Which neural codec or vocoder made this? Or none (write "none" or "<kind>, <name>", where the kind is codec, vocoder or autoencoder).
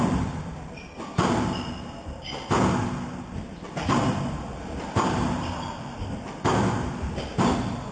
vocoder, BigVGAN v2